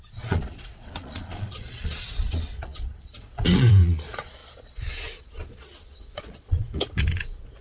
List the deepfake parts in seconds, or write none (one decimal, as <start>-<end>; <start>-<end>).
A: 0.0-7.6

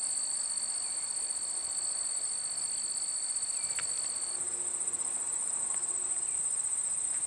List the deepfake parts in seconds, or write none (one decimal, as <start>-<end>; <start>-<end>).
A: none

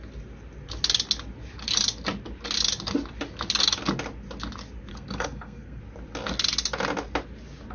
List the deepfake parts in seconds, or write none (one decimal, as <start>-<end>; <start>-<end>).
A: 4.9-5.8

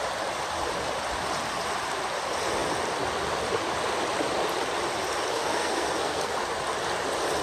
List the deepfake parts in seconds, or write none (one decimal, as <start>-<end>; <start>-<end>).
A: 5.3-6.3

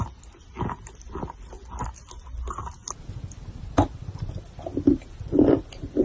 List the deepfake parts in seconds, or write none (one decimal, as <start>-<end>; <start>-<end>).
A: none

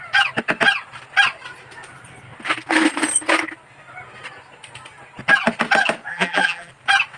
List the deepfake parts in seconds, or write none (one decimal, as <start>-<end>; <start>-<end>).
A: 6.1-6.7

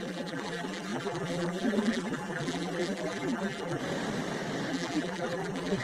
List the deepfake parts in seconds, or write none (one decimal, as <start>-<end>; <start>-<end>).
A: 0.0-3.8; 4.7-5.8

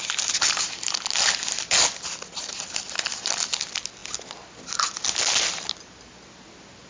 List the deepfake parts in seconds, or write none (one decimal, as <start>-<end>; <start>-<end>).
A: none